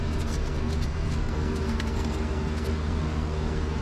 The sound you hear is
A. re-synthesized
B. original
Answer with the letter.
A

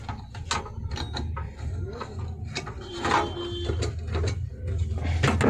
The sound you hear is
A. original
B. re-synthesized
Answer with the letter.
A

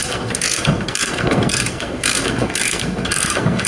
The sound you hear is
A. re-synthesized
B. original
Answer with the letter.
A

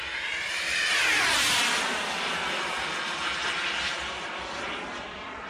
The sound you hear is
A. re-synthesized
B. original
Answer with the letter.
B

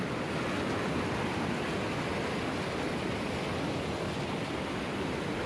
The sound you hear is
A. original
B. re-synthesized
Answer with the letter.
A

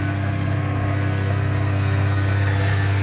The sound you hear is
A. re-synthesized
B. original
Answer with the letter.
A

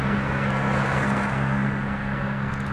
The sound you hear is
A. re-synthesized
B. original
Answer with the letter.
A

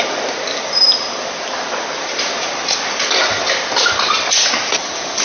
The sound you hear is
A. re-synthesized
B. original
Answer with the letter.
B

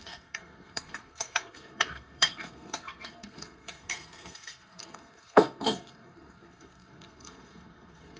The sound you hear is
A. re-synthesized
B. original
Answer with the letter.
A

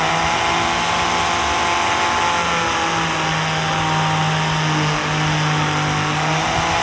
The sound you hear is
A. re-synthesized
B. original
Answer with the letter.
B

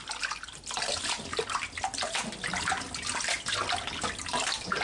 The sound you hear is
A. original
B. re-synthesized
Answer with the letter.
A